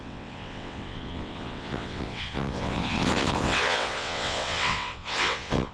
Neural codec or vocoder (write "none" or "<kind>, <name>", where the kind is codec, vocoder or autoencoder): vocoder, WaveNeXt